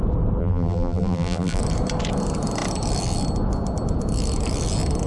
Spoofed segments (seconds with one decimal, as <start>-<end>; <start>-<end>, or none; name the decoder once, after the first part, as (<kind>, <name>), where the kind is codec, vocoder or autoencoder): 0.4-1.6 (vocoder, BigVGAN v2)